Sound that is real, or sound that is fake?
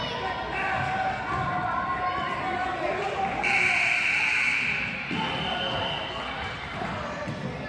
real